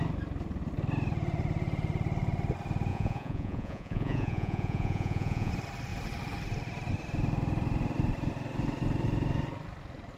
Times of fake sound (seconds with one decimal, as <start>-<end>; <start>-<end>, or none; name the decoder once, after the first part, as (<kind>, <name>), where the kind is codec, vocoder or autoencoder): 2.9-5.5 (vocoder, Vocos)